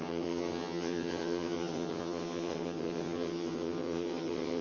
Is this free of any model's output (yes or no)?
no